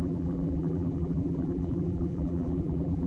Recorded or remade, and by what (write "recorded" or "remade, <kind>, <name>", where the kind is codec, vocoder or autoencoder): remade, vocoder, BigVGAN v2